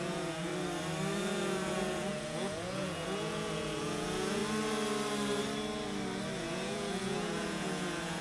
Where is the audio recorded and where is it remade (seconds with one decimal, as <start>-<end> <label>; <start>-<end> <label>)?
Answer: 0.0-0.5 remade; 0.5-1.2 recorded; 1.2-4.4 remade; 4.4-6.4 recorded; 6.4-8.2 remade